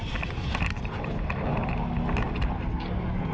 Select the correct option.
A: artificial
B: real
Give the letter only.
B